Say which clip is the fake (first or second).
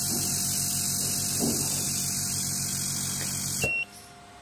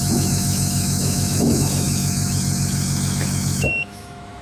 second